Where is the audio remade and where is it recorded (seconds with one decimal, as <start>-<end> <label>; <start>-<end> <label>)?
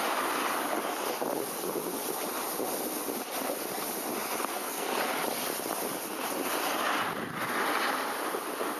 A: 0.0-4.5 recorded; 4.5-5.0 remade; 5.0-8.8 recorded